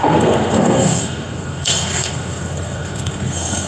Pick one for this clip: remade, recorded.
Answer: remade